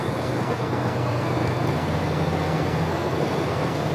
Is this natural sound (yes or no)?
no